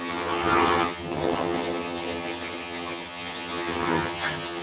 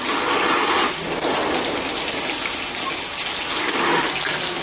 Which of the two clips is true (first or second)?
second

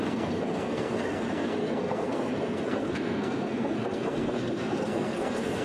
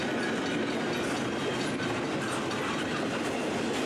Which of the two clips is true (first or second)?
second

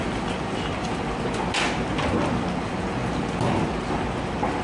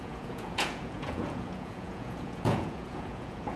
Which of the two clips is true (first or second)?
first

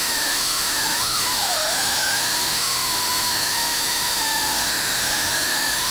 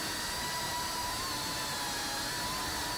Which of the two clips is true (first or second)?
second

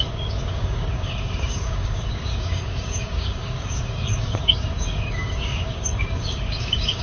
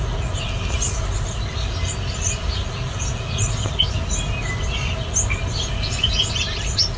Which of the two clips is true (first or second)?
second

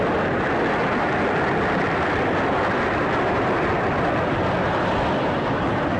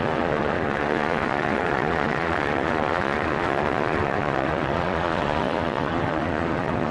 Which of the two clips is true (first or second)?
first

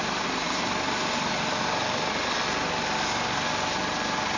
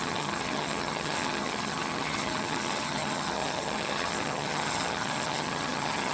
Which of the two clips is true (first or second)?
first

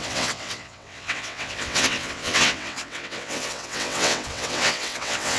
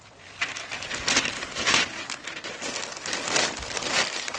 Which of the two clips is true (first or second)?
second